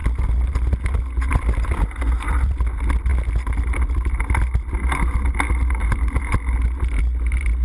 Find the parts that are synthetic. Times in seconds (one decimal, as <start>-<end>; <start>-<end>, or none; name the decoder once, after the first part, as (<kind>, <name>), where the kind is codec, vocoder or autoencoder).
0.0-2.6 (vocoder, BigVGAN v2)